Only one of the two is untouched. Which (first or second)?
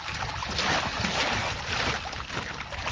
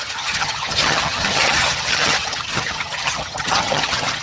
first